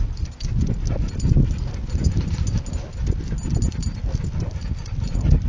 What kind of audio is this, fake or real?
real